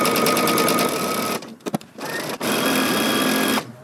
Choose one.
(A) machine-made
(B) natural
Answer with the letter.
B